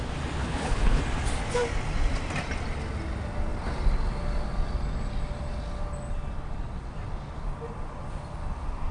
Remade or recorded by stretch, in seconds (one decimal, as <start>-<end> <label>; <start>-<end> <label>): 0.0-0.4 recorded; 0.4-1.0 remade; 1.0-8.9 recorded